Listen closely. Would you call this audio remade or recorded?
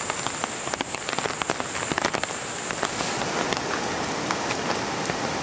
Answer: recorded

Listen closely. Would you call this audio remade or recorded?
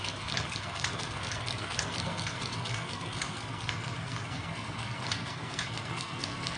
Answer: remade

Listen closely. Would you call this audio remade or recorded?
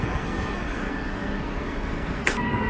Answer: remade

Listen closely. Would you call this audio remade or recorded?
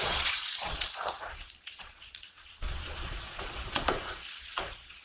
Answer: remade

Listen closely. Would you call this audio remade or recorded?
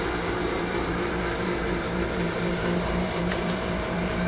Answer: remade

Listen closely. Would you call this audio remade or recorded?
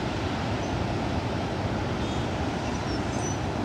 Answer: recorded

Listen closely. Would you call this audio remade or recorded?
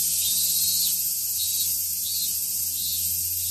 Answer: recorded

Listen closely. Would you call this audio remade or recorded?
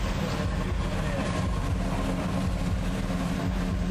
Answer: recorded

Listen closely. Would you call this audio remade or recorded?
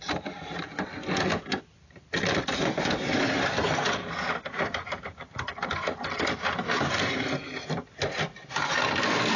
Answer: recorded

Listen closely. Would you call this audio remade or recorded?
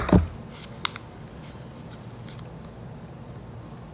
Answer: recorded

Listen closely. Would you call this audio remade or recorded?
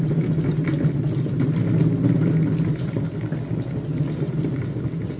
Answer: recorded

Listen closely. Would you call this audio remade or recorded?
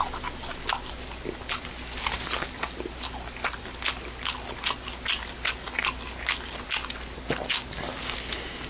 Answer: recorded